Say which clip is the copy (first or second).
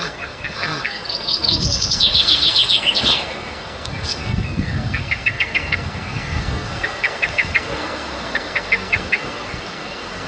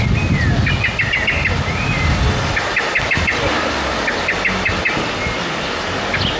first